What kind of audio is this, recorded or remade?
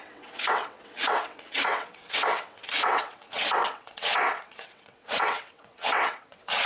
remade